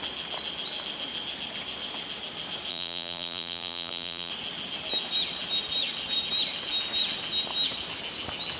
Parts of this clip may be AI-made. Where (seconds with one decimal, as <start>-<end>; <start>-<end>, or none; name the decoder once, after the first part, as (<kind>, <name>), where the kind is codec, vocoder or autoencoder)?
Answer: 2.7-4.3 (vocoder, BigVGAN v2)

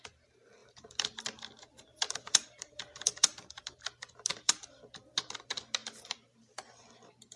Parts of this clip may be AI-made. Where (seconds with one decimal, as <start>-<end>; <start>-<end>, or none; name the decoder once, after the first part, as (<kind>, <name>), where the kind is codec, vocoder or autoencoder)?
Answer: 0.6-3.8 (vocoder, BigVGAN v2); 4.3-5.1; 5.8-7.4

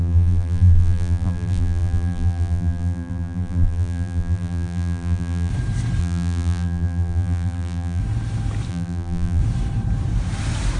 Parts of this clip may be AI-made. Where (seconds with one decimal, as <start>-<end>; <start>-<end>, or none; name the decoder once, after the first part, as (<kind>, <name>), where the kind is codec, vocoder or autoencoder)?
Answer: 0.0-5.5 (vocoder, BigVGAN v2); 6.0-8.0; 8.7-9.4

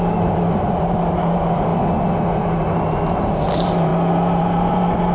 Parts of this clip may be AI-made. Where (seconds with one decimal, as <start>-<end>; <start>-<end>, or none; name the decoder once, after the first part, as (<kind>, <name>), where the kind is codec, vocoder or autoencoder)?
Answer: 0.0-1.7 (vocoder, BigVGAN v2); 2.3-3.9; 4.4-5.1

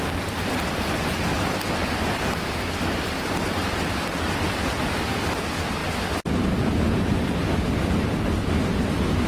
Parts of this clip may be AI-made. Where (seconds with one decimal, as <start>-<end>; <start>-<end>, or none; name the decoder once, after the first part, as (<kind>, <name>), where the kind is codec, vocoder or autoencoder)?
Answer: 0.0-5.8 (vocoder, BigVGAN v2)

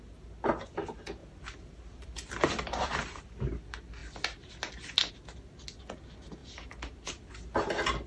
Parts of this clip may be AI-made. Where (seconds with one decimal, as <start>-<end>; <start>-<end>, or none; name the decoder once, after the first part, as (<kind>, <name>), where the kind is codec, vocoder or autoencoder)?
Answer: 1.2-3.4 (vocoder, BigVGAN v2)

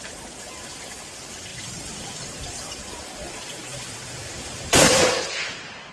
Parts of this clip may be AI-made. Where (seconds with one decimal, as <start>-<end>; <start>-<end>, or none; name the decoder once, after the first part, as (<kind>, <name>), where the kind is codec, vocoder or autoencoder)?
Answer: 1.5-3.0 (vocoder, BigVGAN v2); 3.7-5.0

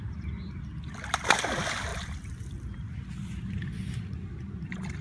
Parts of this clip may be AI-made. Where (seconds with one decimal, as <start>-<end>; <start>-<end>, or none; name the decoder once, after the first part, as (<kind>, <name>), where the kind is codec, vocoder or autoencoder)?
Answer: none